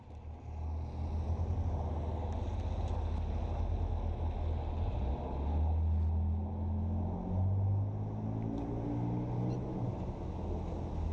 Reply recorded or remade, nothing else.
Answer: recorded